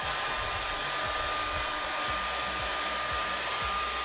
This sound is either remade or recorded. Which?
recorded